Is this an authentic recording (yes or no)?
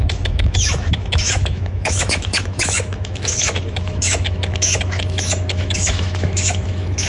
no